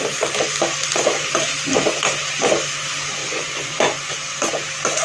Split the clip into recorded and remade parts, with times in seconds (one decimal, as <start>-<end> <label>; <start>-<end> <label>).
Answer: 0.0-3.2 recorded; 3.2-4.5 remade; 4.5-5.0 recorded